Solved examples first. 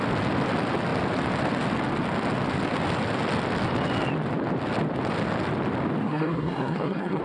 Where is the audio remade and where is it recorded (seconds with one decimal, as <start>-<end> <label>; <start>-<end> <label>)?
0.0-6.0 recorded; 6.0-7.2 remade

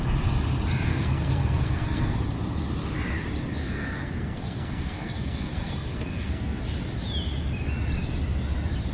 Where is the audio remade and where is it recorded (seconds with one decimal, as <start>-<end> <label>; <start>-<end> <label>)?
0.0-0.9 recorded; 0.9-2.2 remade; 2.2-3.6 recorded; 3.6-6.6 remade; 6.6-8.9 recorded

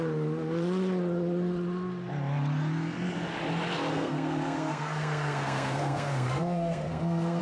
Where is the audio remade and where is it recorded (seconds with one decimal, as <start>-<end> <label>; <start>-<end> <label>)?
0.0-3.9 recorded; 3.9-7.4 remade

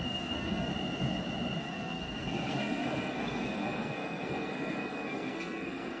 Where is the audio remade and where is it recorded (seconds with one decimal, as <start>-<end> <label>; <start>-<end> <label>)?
0.0-0.7 remade; 0.7-1.6 recorded; 1.6-6.0 remade

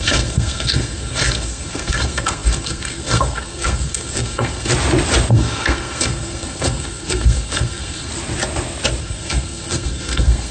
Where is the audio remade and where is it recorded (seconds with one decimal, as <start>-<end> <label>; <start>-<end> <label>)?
0.0-4.7 remade; 4.7-5.3 recorded; 5.3-8.1 remade; 8.1-9.0 recorded; 9.0-10.5 remade